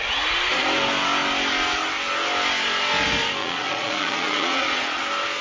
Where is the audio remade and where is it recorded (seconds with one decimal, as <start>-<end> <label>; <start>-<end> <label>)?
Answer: 0.0-3.4 recorded; 3.4-5.0 remade; 5.0-5.4 recorded

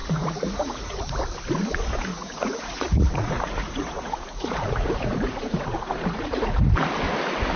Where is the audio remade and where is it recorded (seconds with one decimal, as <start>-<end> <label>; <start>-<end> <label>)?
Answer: 0.0-1.2 remade; 1.2-2.1 recorded; 2.1-6.7 remade; 6.7-7.6 recorded

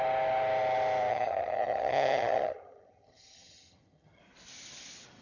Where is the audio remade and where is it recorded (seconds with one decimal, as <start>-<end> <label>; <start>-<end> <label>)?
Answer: 0.0-1.1 recorded; 1.1-4.2 remade; 4.2-5.2 recorded